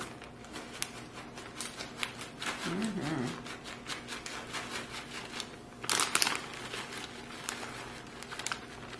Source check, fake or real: real